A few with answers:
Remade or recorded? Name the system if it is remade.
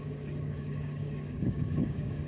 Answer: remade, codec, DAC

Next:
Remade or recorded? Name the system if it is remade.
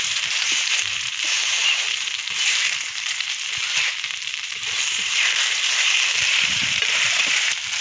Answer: remade, vocoder, BigVGAN v2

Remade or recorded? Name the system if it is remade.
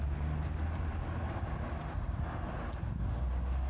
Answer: recorded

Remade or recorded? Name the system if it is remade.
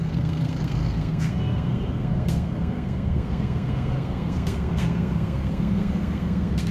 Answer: remade, codec, SNAC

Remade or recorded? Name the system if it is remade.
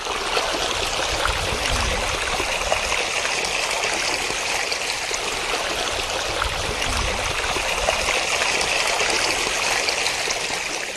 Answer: recorded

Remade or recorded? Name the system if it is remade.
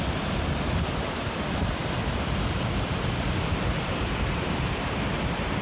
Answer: remade, vocoder, BigVGAN v2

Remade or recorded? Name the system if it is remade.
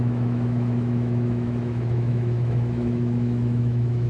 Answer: remade, autoencoder, DAC-VAE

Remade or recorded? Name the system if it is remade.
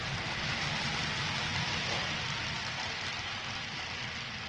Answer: recorded